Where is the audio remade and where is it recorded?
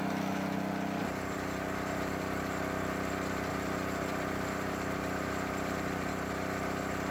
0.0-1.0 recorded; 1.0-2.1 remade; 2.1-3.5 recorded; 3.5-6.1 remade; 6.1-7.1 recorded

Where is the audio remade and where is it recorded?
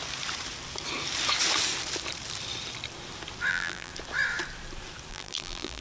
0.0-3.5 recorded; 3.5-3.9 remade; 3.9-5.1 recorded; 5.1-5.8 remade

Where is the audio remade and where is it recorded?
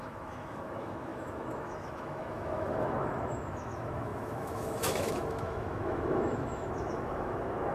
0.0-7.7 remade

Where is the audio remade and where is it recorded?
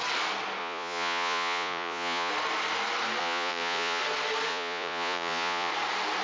0.0-0.6 recorded; 0.6-2.3 remade; 2.3-3.2 recorded; 3.2-4.0 remade; 4.0-4.5 recorded; 4.5-5.7 remade; 5.7-6.2 recorded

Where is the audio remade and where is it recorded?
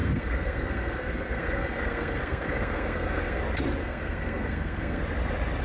0.0-3.4 remade; 3.4-3.8 recorded; 3.8-5.0 remade; 5.0-5.6 recorded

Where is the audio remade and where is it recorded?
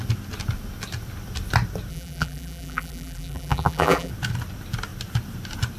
0.0-1.9 recorded; 1.9-4.1 remade; 4.1-5.8 recorded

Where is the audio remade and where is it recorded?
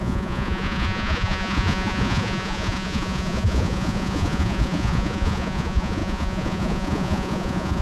0.0-7.8 remade